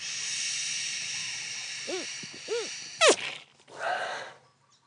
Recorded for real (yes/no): yes